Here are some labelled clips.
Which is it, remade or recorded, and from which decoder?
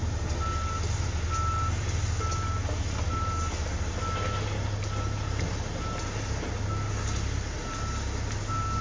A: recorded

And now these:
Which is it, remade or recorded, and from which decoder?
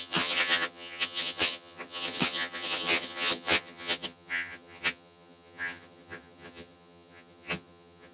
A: remade, vocoder, HiFi-GAN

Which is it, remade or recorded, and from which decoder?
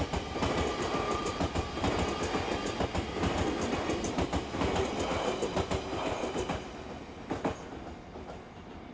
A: recorded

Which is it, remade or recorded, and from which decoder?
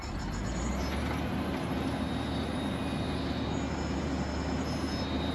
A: recorded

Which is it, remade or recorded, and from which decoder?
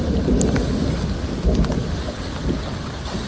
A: recorded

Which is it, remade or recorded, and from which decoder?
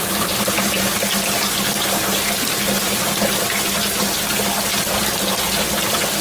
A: recorded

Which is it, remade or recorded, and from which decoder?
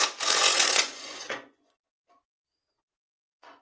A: remade, vocoder, Vocos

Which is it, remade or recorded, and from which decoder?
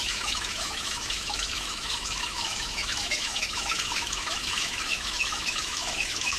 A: remade, autoencoder, DAC-VAE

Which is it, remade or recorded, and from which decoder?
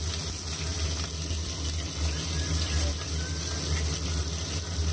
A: recorded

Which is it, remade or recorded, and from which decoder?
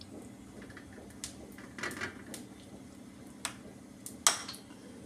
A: recorded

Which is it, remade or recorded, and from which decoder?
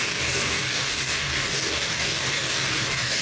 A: remade, codec, DAC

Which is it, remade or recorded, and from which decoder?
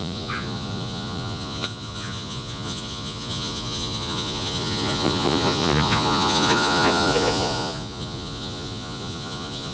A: remade, vocoder, Vocos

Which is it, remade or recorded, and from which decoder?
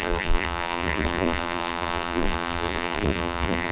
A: remade, vocoder, BigVGAN v2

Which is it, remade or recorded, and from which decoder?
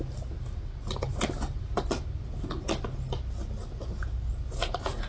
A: recorded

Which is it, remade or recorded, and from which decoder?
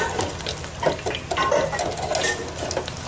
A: recorded